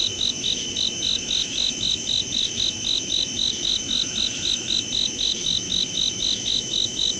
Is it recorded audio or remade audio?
remade